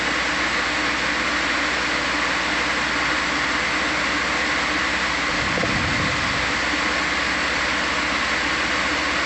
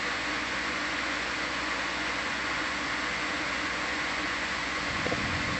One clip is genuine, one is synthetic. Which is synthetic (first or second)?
second